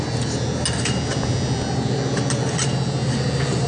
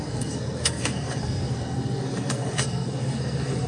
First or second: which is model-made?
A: second